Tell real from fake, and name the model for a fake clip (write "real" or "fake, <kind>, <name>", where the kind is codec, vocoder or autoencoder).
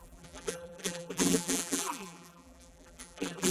fake, vocoder, BigVGAN v2